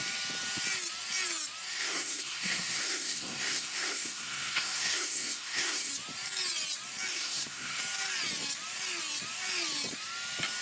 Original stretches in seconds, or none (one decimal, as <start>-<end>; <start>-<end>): 0.0-1.7; 5.9-7.1; 7.8-10.6